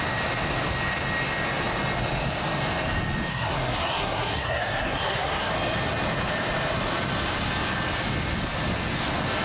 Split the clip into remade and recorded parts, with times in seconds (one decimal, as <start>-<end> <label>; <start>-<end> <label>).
0.0-3.3 recorded; 3.3-5.5 remade; 5.5-9.4 recorded